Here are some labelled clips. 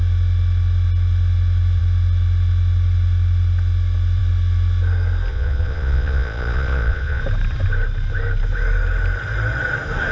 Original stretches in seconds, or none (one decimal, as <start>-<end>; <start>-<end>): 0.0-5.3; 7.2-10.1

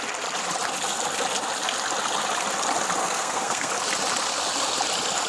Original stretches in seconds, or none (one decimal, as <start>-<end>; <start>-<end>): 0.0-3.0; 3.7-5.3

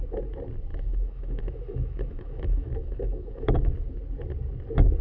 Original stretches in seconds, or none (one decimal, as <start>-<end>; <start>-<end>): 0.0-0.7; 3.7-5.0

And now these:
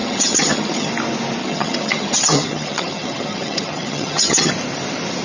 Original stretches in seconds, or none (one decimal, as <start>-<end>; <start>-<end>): 0.9-1.4; 4.5-5.2

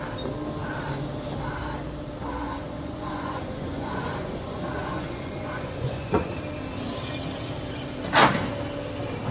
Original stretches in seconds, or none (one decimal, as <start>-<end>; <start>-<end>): 0.0-2.2; 6.3-9.3

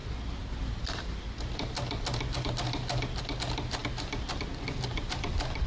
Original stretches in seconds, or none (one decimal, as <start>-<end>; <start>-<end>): 0.0-3.4; 3.8-4.9

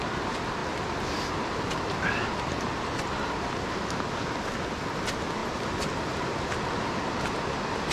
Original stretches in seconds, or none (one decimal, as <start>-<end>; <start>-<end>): 0.0-7.9